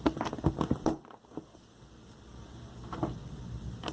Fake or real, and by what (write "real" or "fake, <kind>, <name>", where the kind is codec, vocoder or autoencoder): real